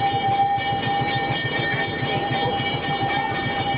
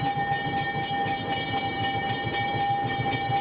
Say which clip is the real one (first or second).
second